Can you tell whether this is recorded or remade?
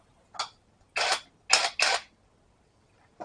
recorded